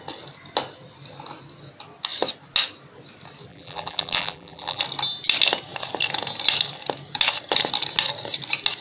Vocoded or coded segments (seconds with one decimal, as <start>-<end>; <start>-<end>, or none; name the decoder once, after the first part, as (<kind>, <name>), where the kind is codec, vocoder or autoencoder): 3.5-4.8 (vocoder, BigVGAN v2)